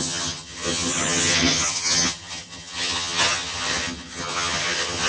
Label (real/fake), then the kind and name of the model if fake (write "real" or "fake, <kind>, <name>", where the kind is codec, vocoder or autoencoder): fake, vocoder, HiFi-GAN